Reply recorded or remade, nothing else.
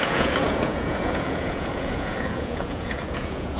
remade